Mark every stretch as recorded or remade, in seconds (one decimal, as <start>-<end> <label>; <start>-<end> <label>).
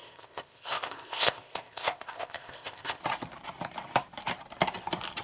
0.0-3.0 remade; 3.0-5.2 recorded